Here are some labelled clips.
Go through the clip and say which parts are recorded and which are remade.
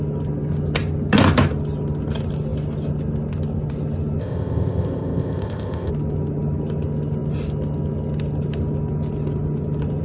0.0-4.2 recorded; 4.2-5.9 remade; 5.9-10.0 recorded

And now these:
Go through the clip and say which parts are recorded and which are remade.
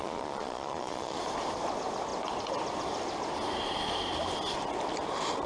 0.0-1.2 remade; 1.2-5.5 recorded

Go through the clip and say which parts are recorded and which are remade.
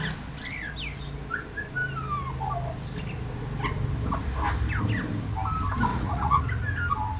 0.0-5.9 recorded; 5.9-6.4 remade; 6.4-7.2 recorded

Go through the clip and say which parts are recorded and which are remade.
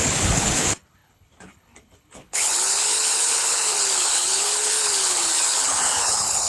0.0-6.5 remade